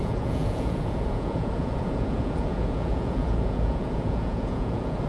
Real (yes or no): no